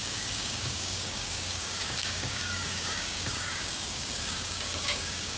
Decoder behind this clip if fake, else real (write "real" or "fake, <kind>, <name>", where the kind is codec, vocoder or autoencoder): fake, codec, DAC